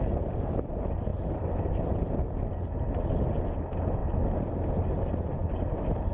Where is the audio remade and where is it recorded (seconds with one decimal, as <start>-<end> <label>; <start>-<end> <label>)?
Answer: 0.0-1.1 recorded; 1.1-2.1 remade; 2.1-6.1 recorded